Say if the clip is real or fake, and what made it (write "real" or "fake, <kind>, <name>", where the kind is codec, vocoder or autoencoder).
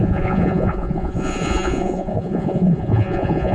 fake, vocoder, Vocos